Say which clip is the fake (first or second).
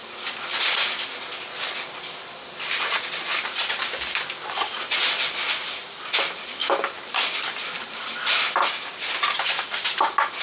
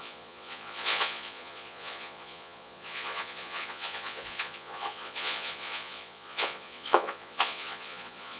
second